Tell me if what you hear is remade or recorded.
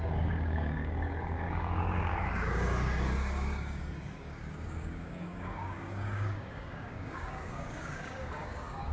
remade